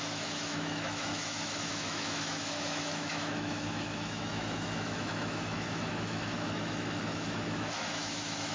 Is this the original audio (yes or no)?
no